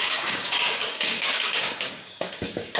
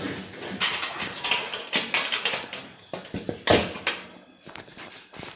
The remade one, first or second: first